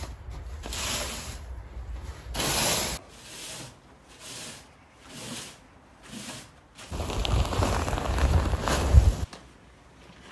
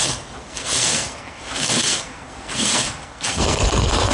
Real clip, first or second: first